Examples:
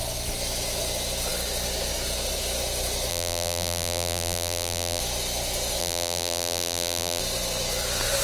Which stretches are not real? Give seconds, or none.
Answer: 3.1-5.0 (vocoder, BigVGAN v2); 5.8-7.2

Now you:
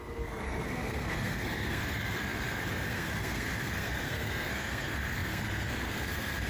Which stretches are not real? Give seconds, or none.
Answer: 0.0-6.5 (codec, SNAC)

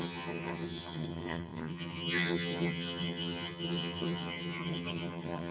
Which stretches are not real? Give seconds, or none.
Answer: 0.0-5.5 (vocoder, HiFi-GAN)

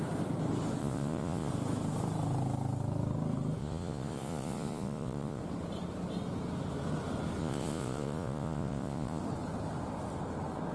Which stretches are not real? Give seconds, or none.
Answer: 0.8-1.5 (vocoder, Vocos); 3.6-5.4; 7.4-9.2

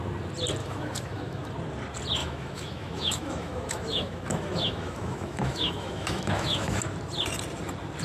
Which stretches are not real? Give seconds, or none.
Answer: 0.6-1.5 (autoencoder, DAC-VAE); 2.2-6.8